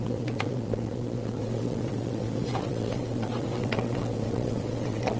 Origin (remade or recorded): remade